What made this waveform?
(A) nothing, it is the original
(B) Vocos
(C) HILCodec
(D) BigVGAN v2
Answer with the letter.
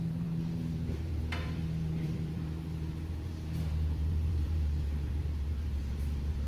D